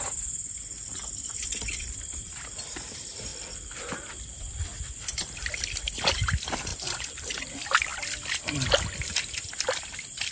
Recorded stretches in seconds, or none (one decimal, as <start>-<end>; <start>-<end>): 0.0-6.7; 7.4-10.3